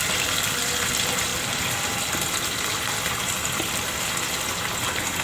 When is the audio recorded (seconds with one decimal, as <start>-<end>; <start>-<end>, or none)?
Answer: 1.3-4.3